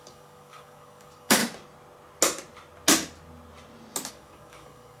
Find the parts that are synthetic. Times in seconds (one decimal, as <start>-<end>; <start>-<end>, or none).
0.0-1.4; 4.1-5.0